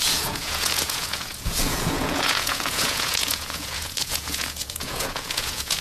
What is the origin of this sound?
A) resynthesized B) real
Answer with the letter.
A